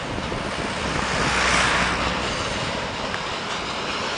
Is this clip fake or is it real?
real